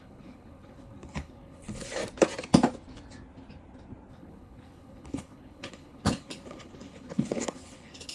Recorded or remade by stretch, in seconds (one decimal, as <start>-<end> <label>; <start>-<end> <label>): 0.0-2.0 remade; 2.0-4.1 recorded; 4.1-8.1 remade